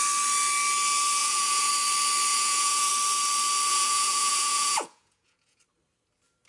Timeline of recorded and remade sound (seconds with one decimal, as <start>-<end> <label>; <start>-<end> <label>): 0.0-1.2 recorded; 1.2-1.7 remade; 1.7-2.3 recorded; 2.3-2.9 remade; 2.9-3.7 recorded; 3.7-5.6 remade; 5.6-6.5 recorded